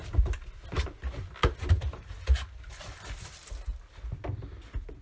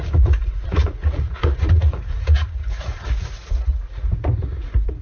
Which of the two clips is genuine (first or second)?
first